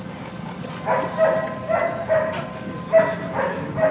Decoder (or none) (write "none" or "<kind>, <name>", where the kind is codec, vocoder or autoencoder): none